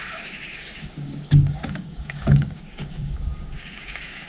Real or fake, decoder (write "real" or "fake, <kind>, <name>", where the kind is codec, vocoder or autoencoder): fake, codec, DAC